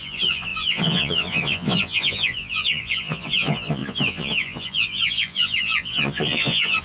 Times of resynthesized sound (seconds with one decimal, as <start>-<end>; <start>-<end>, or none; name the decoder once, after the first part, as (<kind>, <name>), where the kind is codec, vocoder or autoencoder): 0.0-6.8 (vocoder, Vocos)